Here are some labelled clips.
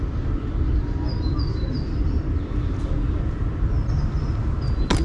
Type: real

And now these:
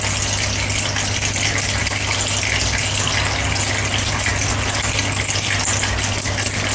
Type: real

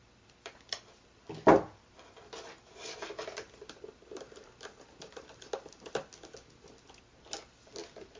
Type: real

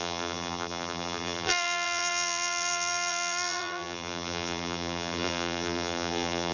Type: fake